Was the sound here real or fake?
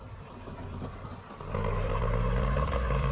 real